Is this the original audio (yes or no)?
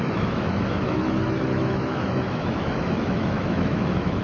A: no